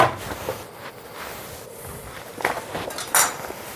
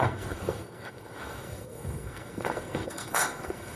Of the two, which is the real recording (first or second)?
first